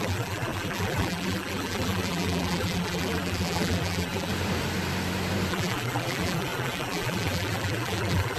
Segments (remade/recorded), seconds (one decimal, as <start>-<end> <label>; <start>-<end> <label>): 0.0-4.3 remade; 4.3-5.5 recorded; 5.5-8.4 remade